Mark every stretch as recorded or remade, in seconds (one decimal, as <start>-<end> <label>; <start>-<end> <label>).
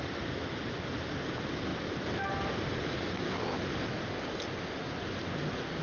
0.0-5.8 recorded